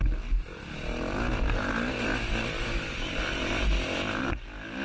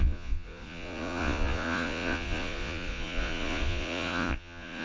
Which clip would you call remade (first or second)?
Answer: second